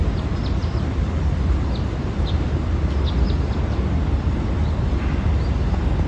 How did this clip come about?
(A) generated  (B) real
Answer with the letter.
B